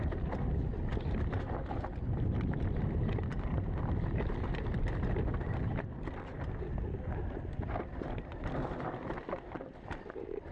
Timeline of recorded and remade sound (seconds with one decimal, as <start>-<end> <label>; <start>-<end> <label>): 0.0-0.9 recorded; 0.9-5.6 remade; 5.6-8.3 recorded; 8.3-10.5 remade